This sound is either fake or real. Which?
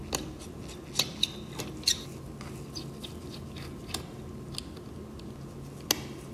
real